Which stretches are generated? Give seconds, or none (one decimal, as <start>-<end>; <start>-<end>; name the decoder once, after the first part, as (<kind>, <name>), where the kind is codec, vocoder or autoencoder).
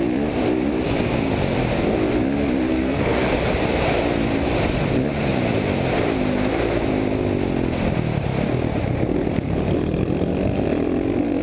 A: 2.7-3.3 (codec, SNAC)